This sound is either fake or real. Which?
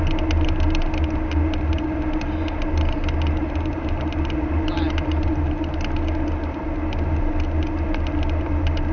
real